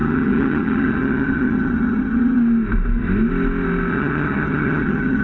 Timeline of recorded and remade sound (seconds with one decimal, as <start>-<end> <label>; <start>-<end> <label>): 0.0-2.4 remade; 2.4-3.9 recorded; 3.9-5.2 remade